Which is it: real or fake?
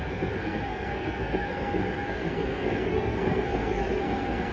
fake